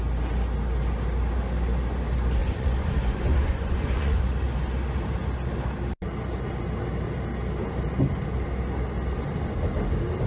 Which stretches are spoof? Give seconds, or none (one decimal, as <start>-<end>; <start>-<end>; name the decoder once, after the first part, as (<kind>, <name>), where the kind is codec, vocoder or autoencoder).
2.4-4.2 (vocoder, Vocos)